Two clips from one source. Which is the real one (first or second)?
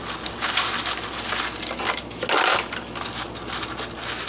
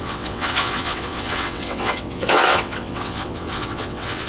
first